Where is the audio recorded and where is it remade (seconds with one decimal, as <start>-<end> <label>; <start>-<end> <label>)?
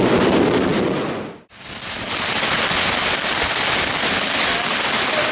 0.0-5.3 recorded